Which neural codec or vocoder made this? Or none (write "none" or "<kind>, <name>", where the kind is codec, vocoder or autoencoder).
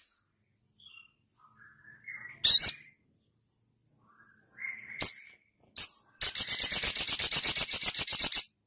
none